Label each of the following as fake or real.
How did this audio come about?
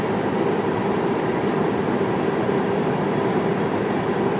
real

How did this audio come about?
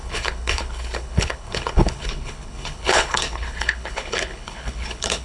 fake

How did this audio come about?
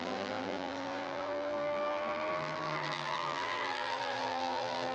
fake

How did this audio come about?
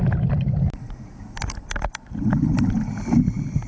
real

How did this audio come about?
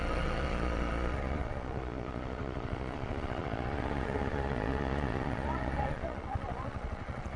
fake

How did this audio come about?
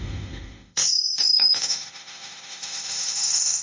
fake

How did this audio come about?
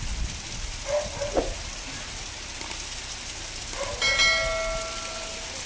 real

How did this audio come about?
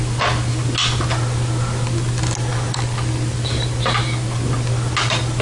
real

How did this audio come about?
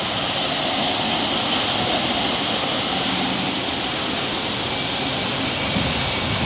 real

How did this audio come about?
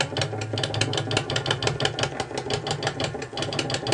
real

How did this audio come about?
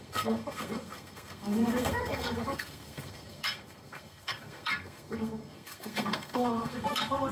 fake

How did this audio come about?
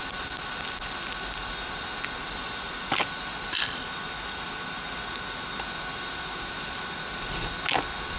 real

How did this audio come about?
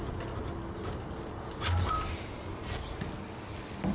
real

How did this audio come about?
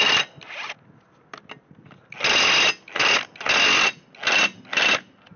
real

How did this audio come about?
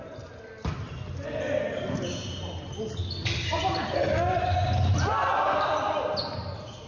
real